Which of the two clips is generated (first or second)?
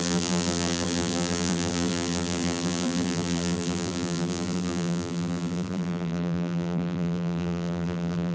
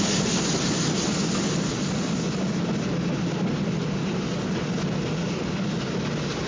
first